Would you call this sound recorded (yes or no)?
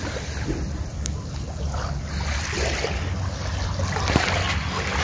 yes